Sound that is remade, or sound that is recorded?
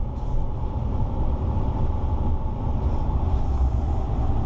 recorded